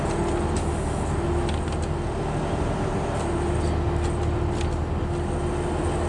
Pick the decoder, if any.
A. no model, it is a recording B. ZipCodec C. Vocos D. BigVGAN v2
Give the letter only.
A